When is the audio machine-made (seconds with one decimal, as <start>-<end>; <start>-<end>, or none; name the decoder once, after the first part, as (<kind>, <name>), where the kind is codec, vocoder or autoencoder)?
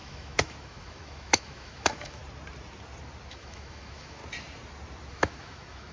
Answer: 0.0-2.2 (autoencoder, DAC-VAE); 3.3-4.2; 5.1-5.9